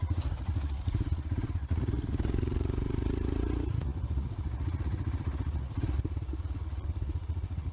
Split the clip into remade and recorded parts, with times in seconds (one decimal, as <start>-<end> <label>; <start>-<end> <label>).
0.0-7.7 remade